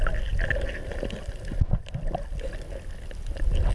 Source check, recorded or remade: recorded